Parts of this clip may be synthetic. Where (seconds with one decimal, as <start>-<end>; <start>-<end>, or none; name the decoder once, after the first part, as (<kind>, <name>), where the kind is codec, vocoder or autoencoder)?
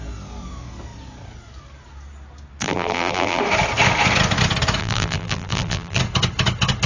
2.6-3.4 (vocoder, BigVGAN v2); 4.8-6.0